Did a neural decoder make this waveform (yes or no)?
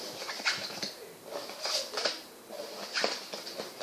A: no